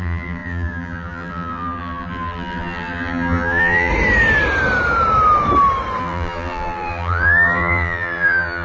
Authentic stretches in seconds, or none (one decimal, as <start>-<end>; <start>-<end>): 3.9-6.0